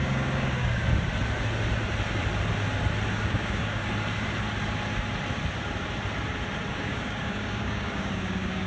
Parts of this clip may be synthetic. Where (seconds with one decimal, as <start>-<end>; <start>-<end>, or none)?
0.0-0.8; 3.1-3.8; 6.7-8.7